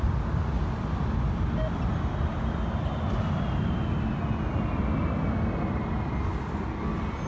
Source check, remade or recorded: recorded